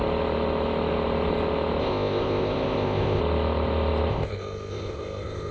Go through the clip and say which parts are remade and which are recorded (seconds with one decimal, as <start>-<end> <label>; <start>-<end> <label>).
0.0-1.8 recorded; 1.8-3.2 remade; 3.2-4.1 recorded; 4.1-5.5 remade

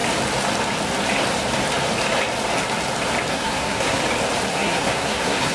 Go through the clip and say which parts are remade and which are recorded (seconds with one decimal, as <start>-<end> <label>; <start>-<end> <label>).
0.0-3.3 recorded; 3.3-4.0 remade; 4.0-4.5 recorded; 4.5-5.5 remade

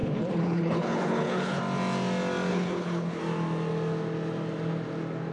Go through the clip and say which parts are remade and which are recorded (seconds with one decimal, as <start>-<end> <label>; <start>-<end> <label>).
0.0-1.6 remade; 1.6-2.5 recorded; 2.5-3.2 remade; 3.2-5.3 recorded

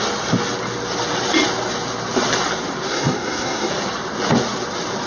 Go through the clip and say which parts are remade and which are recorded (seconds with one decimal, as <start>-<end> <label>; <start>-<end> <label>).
0.0-2.9 recorded; 2.9-3.7 remade; 3.7-5.1 recorded

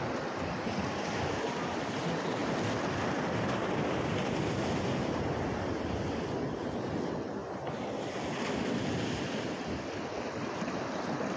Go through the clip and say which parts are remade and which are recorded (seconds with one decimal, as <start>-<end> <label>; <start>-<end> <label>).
0.0-11.4 recorded